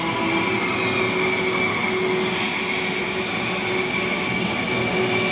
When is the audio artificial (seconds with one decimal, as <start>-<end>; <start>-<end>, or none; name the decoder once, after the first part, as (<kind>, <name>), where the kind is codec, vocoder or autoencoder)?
none